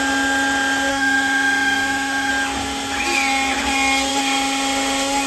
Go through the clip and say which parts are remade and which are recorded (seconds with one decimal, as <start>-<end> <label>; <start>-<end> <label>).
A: 0.0-0.9 recorded; 0.9-2.3 remade; 2.3-4.1 recorded; 4.1-5.3 remade